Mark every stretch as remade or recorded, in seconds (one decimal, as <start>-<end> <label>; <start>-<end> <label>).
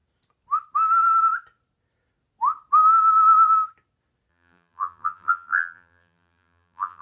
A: 0.0-4.3 recorded; 4.3-7.0 remade